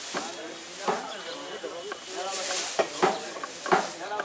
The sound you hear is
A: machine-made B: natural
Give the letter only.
B